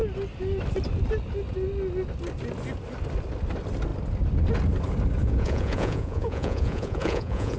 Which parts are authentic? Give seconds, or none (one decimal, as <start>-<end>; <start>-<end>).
0.0-5.2